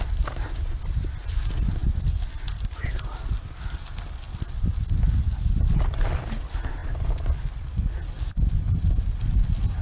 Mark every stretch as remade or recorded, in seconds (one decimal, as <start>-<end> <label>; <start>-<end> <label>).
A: 0.0-9.8 recorded